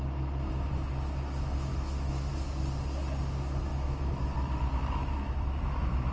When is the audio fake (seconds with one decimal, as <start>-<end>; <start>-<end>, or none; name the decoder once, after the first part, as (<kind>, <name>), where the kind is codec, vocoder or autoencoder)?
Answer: 1.7-2.3 (autoencoder, DAC-VAE); 3.7-6.1